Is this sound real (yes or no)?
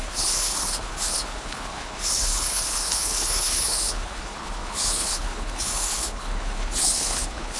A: no